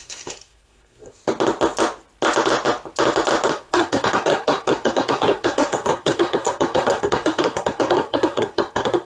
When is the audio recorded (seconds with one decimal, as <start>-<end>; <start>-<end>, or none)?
1.2-3.5